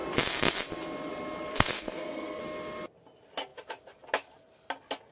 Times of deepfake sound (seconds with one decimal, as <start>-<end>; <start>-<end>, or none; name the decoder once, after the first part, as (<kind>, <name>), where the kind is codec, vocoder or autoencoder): 1.5-2.4 (codec, SNAC)